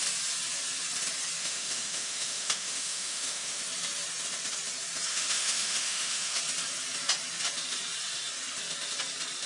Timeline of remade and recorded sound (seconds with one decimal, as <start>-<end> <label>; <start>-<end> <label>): 0.0-1.4 recorded; 1.4-3.6 remade; 3.6-5.1 recorded; 5.1-6.4 remade; 6.4-9.5 recorded